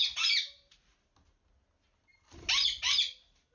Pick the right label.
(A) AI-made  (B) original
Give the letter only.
B